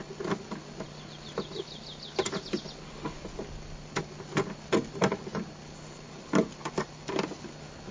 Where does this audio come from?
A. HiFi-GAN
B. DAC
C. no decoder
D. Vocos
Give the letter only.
C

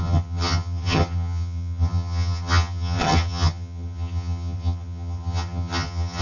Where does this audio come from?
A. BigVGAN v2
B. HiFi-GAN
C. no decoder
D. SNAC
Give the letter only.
B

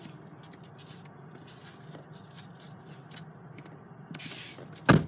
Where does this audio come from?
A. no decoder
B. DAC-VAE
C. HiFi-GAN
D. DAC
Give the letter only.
A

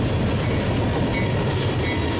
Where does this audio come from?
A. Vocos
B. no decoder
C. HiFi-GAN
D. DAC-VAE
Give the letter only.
B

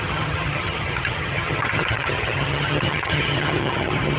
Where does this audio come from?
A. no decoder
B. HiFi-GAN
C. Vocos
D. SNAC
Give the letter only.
B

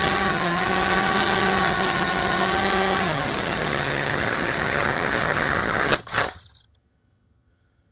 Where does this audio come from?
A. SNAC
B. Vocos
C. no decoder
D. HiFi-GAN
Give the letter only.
D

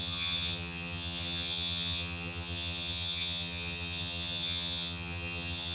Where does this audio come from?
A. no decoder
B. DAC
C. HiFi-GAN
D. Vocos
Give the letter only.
C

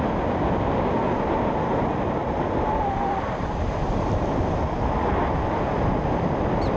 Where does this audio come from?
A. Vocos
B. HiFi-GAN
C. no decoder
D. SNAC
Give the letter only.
C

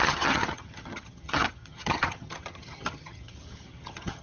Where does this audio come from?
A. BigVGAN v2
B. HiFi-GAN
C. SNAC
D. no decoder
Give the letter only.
B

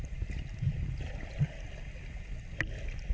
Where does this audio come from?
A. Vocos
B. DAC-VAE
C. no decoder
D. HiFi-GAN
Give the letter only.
C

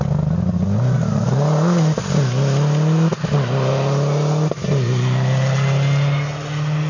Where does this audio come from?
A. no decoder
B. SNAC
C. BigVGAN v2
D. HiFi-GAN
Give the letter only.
A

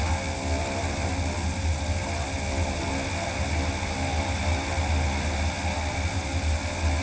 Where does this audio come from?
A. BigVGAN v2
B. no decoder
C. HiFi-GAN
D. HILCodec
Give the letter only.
B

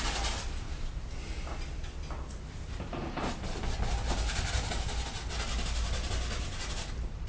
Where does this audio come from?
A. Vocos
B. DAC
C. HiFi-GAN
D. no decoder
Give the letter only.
D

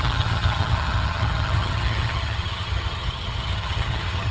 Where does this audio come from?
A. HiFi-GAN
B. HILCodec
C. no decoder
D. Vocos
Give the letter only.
A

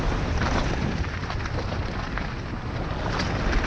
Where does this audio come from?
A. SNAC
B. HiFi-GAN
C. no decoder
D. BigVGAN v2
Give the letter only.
C